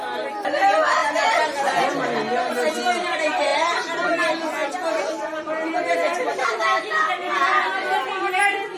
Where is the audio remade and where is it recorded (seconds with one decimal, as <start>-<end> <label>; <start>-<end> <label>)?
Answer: 0.0-8.8 recorded